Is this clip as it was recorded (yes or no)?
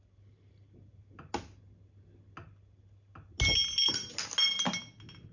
yes